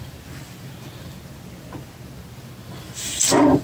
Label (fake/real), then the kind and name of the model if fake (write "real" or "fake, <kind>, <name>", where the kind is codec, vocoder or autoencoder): real